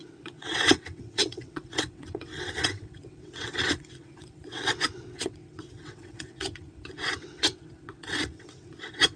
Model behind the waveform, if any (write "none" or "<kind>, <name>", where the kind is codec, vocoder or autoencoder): vocoder, WaveNeXt